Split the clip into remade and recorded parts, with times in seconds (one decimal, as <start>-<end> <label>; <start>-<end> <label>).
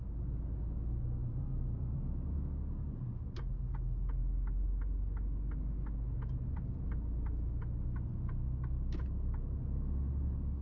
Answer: 0.0-1.2 recorded; 1.2-2.4 remade; 2.4-10.6 recorded